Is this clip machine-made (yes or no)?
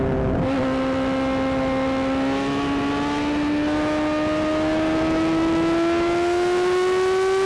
no